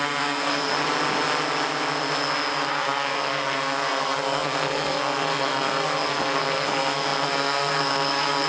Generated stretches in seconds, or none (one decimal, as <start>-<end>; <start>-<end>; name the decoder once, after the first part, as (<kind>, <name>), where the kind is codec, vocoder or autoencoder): 0.0-0.7 (codec, SNAC); 2.7-8.5